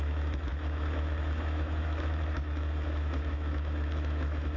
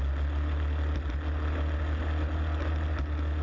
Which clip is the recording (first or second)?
second